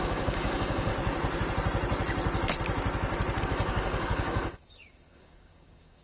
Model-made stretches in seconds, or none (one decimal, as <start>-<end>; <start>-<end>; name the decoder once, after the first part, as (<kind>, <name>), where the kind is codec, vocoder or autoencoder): 0.0-0.9 (codec, DAC); 3.4-6.0